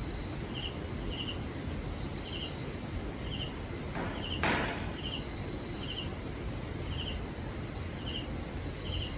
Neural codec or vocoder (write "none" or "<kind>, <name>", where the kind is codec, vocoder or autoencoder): none